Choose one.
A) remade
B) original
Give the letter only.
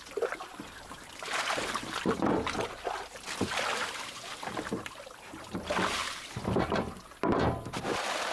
B